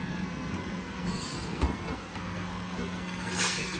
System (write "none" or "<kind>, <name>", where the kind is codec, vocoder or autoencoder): codec, SNAC